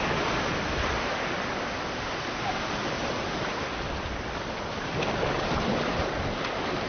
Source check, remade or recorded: recorded